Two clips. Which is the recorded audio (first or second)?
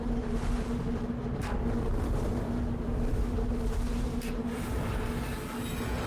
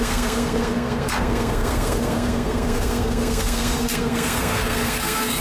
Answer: first